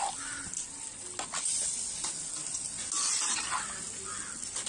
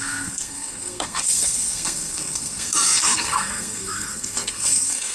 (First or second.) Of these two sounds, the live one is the first